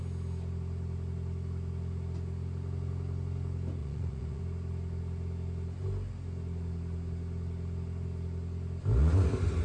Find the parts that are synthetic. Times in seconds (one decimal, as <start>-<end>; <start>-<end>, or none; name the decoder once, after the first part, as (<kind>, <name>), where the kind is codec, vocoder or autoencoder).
3.8-4.4 (vocoder, Vocos)